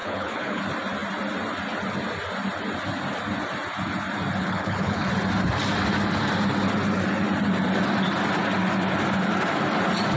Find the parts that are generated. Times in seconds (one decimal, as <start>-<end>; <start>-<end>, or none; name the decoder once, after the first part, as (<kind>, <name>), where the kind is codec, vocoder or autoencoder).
0.0-0.6 (codec, HILCodec); 4.4-5.1